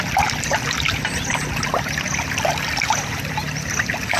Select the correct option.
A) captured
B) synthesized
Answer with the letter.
A